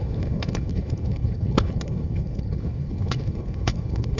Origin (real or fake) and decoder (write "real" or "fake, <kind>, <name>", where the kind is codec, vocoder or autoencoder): fake, codec, HILCodec